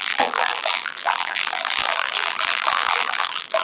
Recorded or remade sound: remade